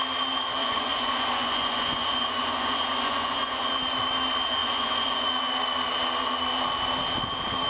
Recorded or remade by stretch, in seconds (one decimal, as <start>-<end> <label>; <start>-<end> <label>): 0.0-0.6 recorded; 0.6-3.7 remade; 3.7-4.6 recorded; 4.6-5.3 remade; 5.3-7.7 recorded